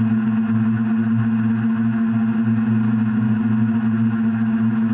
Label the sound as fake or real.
real